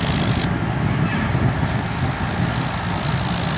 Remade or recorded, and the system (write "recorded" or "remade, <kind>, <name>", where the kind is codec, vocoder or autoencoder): recorded